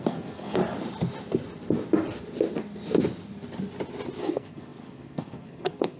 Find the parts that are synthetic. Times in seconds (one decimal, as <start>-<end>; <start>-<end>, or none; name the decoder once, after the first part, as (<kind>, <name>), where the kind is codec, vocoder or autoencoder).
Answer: 0.0-0.6 (codec, SNAC); 4.2-6.0